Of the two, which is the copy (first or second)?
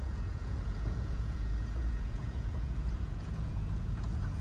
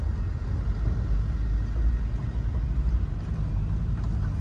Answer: first